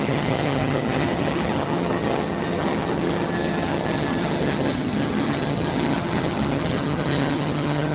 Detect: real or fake fake